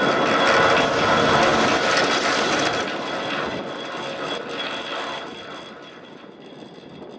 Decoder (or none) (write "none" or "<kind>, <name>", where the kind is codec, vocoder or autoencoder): none